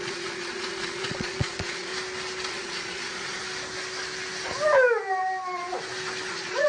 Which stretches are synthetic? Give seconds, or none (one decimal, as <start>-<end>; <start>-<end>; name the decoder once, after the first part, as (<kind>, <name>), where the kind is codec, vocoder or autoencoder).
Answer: 0.0-1.9 (vocoder, Vocos); 2.5-3.4; 6.3-6.7